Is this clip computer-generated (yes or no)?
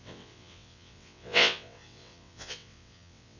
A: yes